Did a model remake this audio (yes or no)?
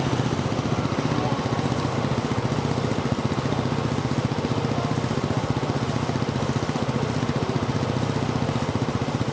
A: no